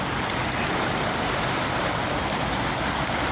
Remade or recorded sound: recorded